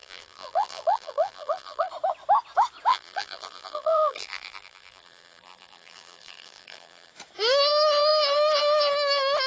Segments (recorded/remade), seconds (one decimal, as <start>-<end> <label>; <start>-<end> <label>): 0.0-1.9 remade; 1.9-2.9 recorded; 2.9-7.1 remade; 7.1-9.5 recorded